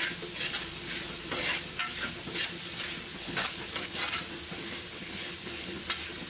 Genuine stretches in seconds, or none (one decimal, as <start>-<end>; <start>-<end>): 0.0-3.1; 3.6-4.9; 5.8-6.3